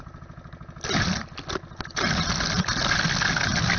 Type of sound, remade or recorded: recorded